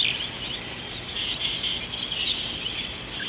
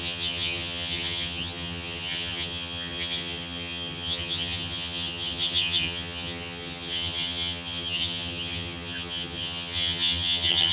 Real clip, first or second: first